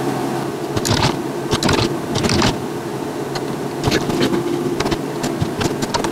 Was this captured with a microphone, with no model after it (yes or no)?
yes